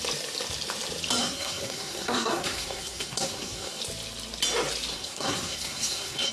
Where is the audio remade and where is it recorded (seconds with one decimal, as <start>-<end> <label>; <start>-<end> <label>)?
0.0-1.2 recorded; 1.2-3.8 remade; 3.8-4.9 recorded; 4.9-6.3 remade